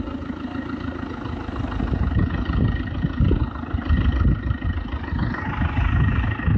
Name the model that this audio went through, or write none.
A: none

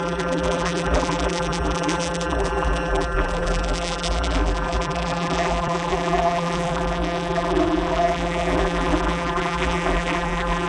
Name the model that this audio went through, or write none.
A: vocoder, BigVGAN v2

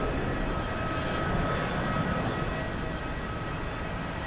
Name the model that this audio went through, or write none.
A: none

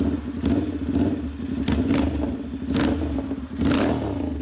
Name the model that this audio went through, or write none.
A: none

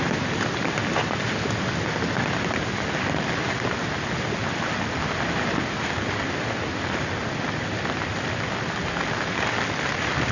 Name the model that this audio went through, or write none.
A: none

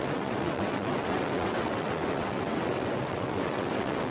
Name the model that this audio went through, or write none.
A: vocoder, WaveNeXt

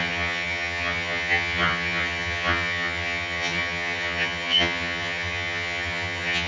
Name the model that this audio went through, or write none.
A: vocoder, HiFi-GAN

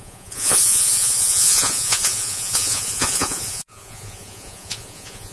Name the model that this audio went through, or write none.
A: vocoder, Vocos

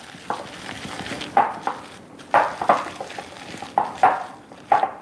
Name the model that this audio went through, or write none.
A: vocoder, BigVGAN v2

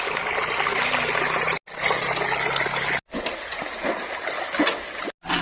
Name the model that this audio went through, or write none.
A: none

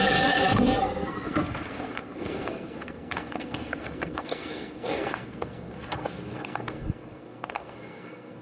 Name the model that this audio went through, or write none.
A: codec, SNAC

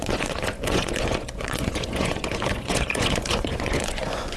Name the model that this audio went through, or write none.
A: vocoder, Vocos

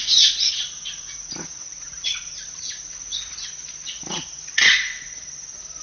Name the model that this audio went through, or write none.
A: vocoder, Vocos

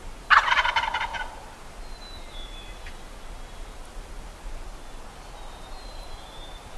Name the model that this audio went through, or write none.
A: none